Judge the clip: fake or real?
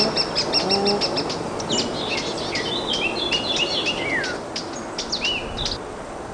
real